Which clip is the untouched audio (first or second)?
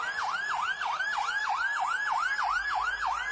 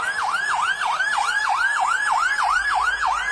first